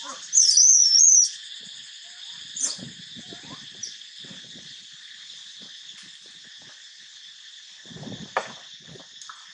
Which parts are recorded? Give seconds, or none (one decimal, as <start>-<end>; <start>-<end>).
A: 0.0-9.5